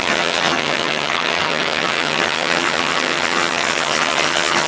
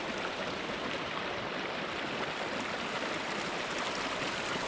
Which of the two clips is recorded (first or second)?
second